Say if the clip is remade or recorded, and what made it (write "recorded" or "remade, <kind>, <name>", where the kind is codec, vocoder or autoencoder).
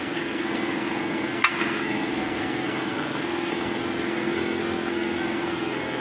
remade, codec, SNAC